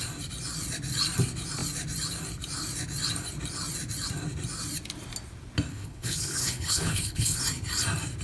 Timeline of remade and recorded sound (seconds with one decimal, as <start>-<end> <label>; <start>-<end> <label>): 0.0-5.7 recorded; 5.7-7.4 remade; 7.4-8.2 recorded